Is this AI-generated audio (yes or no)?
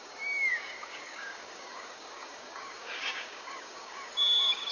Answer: yes